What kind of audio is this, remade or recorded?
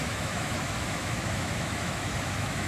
remade